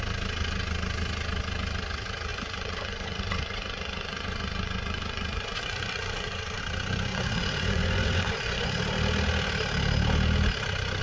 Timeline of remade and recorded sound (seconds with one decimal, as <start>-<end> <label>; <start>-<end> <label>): 0.0-2.3 recorded; 2.3-6.6 remade; 6.6-7.1 recorded; 7.1-8.8 remade; 8.8-11.0 recorded